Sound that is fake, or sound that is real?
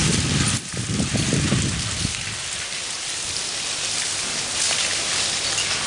real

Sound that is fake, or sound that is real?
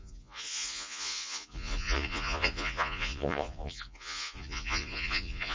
fake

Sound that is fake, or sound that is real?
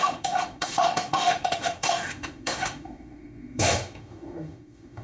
fake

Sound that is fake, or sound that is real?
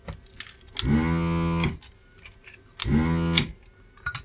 real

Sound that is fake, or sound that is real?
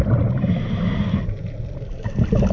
real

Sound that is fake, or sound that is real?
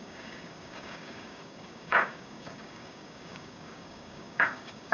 fake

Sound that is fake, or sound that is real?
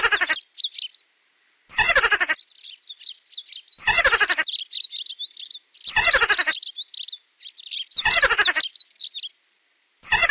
real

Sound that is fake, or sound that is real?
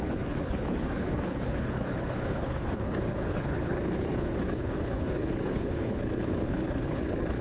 fake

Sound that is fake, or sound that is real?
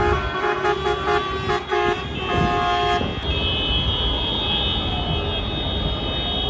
real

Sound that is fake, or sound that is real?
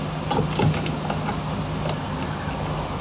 real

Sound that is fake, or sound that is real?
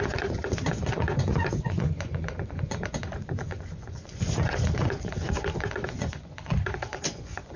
fake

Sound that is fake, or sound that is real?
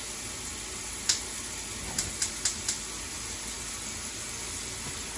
real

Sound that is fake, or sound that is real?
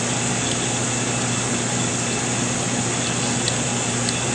real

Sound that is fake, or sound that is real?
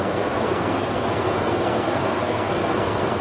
fake